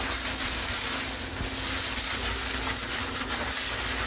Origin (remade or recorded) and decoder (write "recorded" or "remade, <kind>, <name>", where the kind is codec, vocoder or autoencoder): recorded